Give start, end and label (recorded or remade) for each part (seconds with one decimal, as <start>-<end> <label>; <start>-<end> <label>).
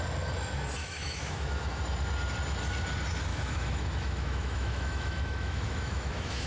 0.0-0.8 recorded; 0.8-1.8 remade; 1.8-3.3 recorded; 3.3-6.5 remade